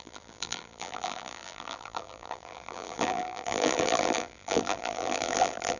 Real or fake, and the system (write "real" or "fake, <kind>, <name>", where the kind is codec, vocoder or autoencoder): fake, vocoder, BigVGAN v2